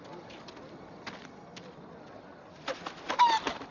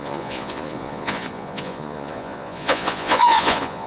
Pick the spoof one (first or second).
second